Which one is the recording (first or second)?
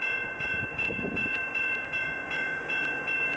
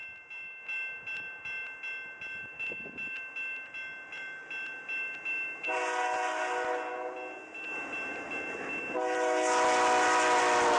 second